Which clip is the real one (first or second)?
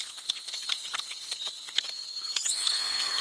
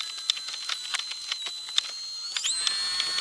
second